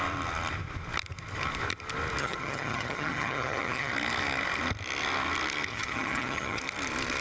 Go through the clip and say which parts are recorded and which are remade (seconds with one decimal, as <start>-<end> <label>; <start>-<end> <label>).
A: 0.0-2.2 recorded; 2.2-3.9 remade; 3.9-5.7 recorded; 5.7-6.6 remade; 6.6-7.2 recorded